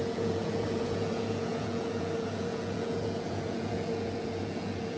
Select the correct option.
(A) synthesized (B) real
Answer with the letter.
A